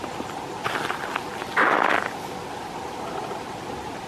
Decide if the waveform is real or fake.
real